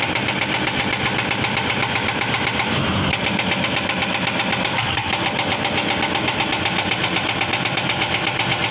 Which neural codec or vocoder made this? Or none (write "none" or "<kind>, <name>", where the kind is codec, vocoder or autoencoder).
none